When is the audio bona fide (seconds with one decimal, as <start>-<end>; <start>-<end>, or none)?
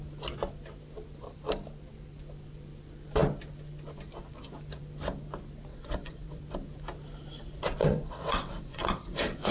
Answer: 0.0-5.7; 6.4-7.8